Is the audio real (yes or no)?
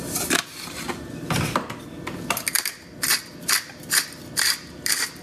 yes